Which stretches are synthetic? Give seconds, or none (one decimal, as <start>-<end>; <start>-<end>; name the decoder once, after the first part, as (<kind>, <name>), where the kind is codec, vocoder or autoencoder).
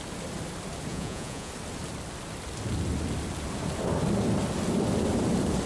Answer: 0.9-1.5 (vocoder, Vocos)